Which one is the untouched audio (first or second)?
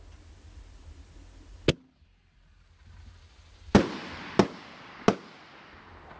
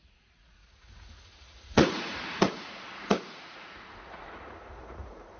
first